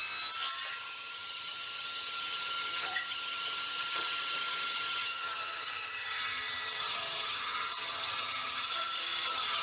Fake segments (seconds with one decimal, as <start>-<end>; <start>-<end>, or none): 0.7-9.6